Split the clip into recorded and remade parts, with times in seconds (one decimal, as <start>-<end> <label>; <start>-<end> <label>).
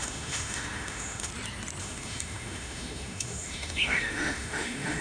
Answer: 0.0-1.3 remade; 1.3-1.8 recorded; 1.8-5.0 remade